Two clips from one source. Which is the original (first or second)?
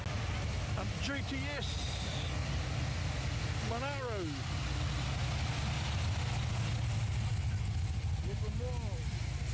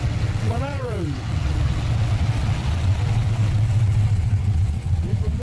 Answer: first